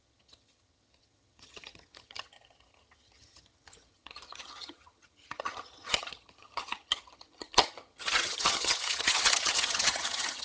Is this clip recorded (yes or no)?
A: no